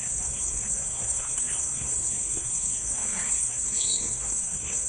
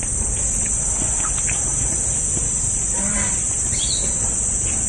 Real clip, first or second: second